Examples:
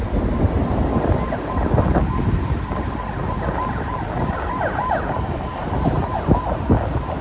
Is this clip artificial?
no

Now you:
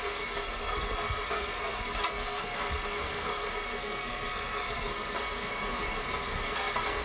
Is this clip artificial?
yes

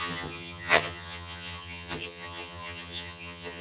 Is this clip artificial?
yes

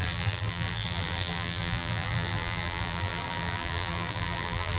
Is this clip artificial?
yes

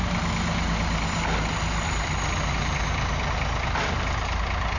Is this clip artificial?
no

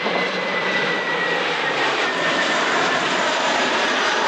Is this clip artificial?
yes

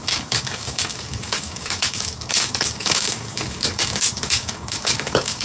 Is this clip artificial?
yes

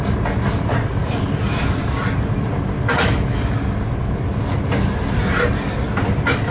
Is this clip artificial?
no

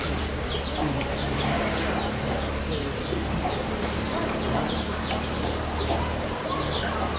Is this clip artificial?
no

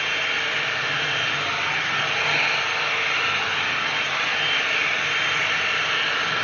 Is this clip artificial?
no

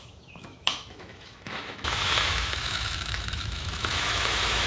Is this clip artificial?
yes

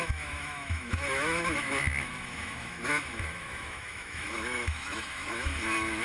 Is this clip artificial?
yes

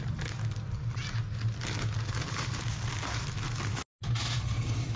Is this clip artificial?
no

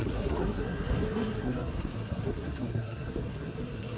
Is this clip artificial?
yes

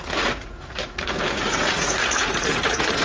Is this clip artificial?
yes